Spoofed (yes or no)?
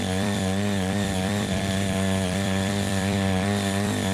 yes